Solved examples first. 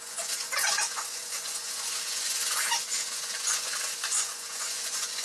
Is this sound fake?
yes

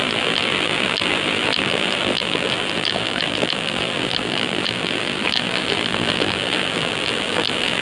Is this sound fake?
yes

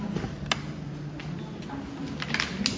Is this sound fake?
no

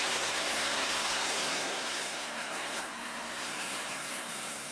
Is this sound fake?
yes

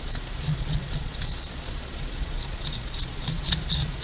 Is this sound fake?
yes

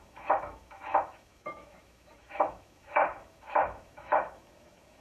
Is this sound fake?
yes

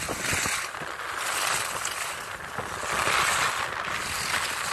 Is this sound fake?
no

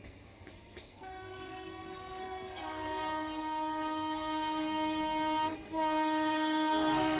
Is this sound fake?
yes